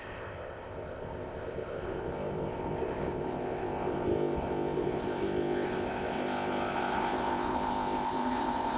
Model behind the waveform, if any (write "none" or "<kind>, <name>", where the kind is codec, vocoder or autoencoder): codec, ZipCodec